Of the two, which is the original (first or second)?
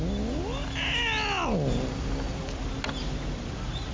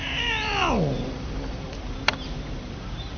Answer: first